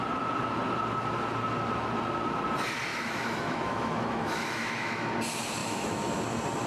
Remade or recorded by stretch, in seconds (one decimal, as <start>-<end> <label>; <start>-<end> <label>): 0.0-2.9 recorded; 2.9-5.1 remade; 5.1-5.6 recorded; 5.6-6.2 remade; 6.2-6.7 recorded